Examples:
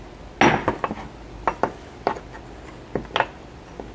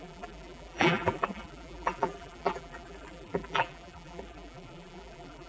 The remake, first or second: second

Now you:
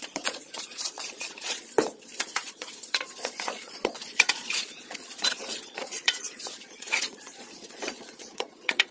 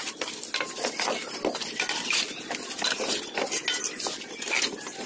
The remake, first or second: first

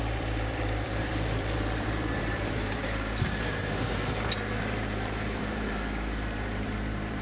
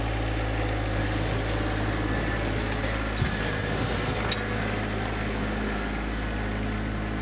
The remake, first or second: first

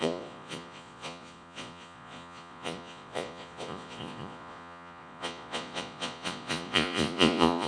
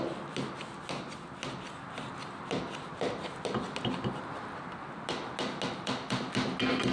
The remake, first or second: first